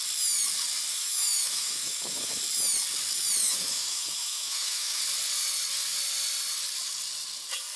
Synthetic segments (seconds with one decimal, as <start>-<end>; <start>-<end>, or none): 0.9-2.4; 3.4-5.0